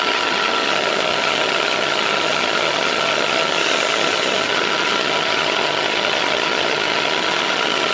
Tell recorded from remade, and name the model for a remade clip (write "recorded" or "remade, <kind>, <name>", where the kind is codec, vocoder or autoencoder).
remade, vocoder, HiFi-GAN